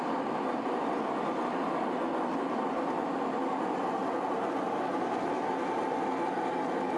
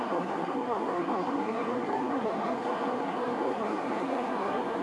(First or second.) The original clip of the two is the first